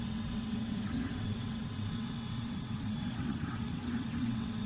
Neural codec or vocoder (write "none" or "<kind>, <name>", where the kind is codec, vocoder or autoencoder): vocoder, WaveNeXt